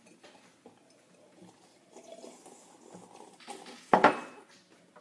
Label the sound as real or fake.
real